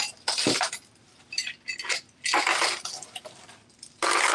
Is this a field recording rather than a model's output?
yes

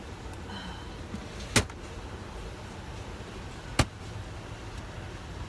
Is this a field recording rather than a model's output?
yes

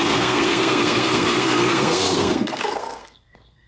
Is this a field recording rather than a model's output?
no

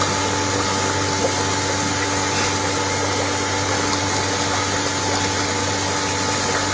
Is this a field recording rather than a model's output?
yes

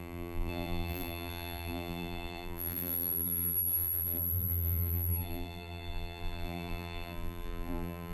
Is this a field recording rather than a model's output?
no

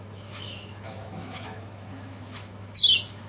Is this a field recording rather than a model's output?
no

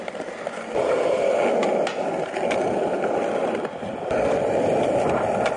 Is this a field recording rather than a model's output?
yes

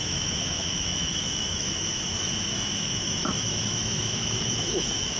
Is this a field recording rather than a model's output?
no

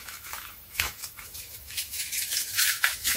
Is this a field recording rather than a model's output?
no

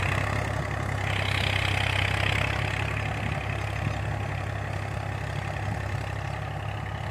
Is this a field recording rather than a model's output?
yes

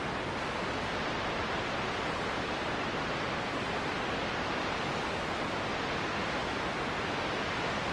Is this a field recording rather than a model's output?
yes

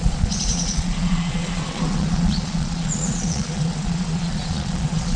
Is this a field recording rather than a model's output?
no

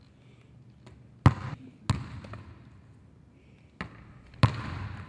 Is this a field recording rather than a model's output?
yes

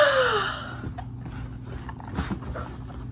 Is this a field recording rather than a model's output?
yes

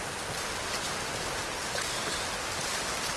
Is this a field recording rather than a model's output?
yes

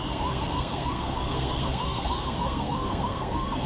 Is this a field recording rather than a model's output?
no